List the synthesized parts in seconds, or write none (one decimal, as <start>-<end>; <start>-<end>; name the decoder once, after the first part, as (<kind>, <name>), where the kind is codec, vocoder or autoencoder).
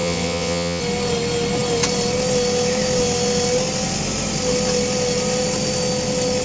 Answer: 0.0-0.8 (vocoder, WaveNeXt)